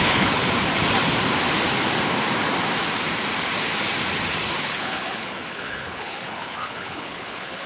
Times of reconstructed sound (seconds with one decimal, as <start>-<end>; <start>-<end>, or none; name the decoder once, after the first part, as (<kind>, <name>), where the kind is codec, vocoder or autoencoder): 0.0-0.4 (codec, HILCodec); 4.6-7.7